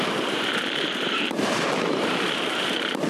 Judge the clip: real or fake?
fake